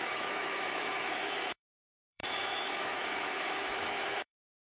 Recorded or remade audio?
remade